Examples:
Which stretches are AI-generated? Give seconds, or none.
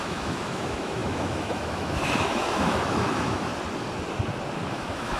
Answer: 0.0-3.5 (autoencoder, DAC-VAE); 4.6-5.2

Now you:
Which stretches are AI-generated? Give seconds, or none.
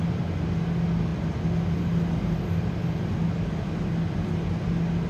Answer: none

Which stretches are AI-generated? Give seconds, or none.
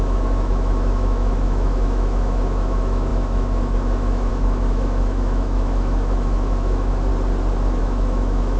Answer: 0.0-7.1 (autoencoder, DAC-VAE); 7.8-8.6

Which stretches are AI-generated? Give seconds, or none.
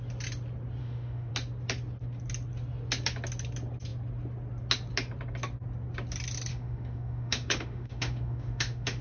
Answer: 0.8-1.3 (autoencoder, DAC-VAE); 6.5-9.0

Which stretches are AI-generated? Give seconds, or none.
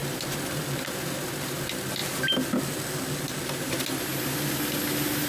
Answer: none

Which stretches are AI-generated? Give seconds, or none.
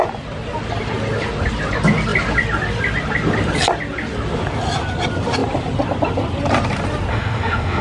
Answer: 7.1-7.8 (autoencoder, DAC-VAE)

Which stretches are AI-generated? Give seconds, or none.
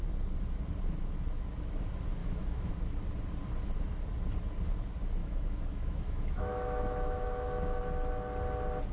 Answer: 2.2-2.7 (autoencoder, DAC-VAE); 5.2-7.8